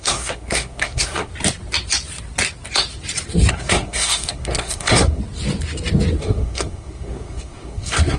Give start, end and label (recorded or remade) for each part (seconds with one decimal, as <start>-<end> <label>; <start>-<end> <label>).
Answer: 0.0-1.3 remade; 1.3-3.5 recorded; 3.5-5.2 remade; 5.2-6.2 recorded; 6.2-8.2 remade